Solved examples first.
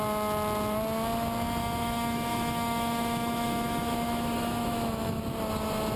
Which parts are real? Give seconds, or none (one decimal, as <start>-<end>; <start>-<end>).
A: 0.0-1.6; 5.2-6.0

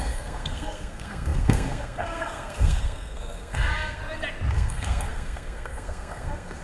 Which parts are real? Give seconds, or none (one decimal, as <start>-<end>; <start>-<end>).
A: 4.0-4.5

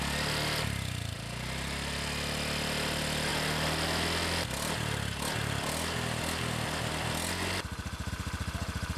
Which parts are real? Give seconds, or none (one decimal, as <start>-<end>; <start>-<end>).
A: 0.0-9.0